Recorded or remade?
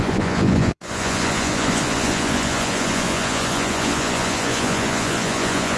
remade